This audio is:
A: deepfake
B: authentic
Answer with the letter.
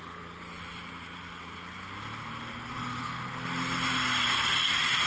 B